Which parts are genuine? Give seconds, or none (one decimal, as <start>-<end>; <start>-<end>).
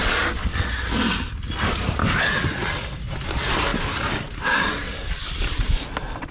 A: 0.0-6.3